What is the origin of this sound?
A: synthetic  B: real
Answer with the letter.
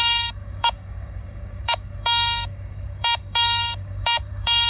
A